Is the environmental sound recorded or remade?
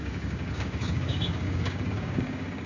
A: remade